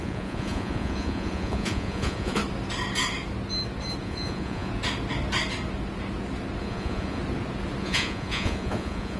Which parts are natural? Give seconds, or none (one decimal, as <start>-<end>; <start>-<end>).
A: 2.4-4.0; 4.7-6.6; 7.2-7.8